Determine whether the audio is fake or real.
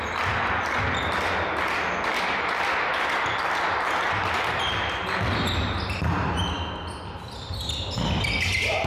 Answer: real